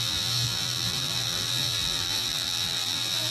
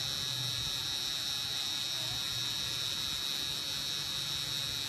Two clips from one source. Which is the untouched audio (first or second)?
second